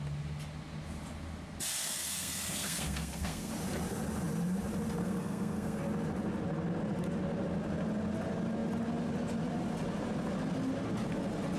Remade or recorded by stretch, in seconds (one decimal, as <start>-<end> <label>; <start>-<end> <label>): 0.0-1.8 recorded; 1.8-3.5 remade; 3.5-5.0 recorded; 5.0-5.8 remade; 5.8-11.6 recorded